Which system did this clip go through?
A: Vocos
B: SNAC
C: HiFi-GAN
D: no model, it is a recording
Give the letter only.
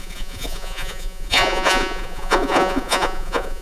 A